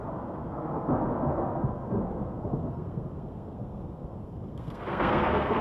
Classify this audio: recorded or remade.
remade